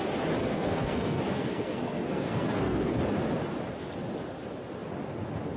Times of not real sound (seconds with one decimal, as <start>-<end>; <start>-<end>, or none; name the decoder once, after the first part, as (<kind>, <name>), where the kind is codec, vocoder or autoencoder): 0.4-3.0 (codec, SNAC)